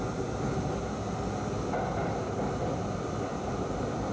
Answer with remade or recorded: recorded